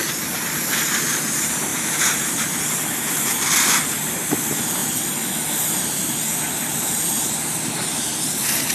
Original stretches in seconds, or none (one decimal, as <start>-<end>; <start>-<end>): 0.0-8.7